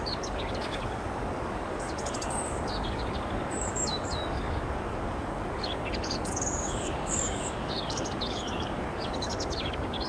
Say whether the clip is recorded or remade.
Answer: remade